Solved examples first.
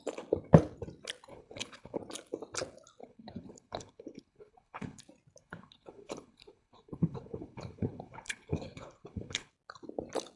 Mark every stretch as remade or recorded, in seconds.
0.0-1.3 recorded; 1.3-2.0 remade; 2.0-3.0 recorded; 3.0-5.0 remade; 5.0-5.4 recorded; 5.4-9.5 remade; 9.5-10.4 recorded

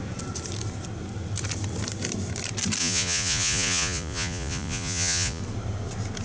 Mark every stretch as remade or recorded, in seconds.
0.0-2.8 recorded; 2.8-5.4 remade; 5.4-6.2 recorded

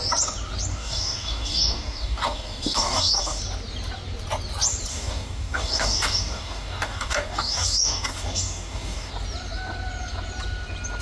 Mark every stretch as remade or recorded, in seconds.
0.0-0.7 recorded; 0.7-3.4 remade; 3.4-4.9 recorded; 4.9-9.1 remade; 9.1-11.0 recorded